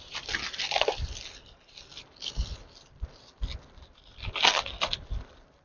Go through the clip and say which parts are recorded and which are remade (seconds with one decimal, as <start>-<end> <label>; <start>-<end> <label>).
0.0-1.9 remade; 1.9-5.6 recorded